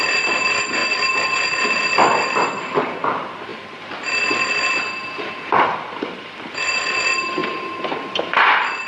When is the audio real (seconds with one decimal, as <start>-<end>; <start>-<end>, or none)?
0.8-2.8; 3.5-5.2